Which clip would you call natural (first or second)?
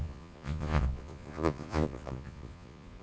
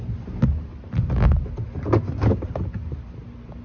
second